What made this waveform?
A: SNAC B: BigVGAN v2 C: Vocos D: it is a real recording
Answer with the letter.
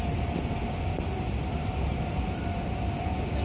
D